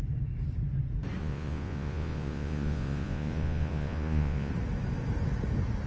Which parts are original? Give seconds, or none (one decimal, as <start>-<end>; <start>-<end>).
0.0-1.2; 4.5-5.9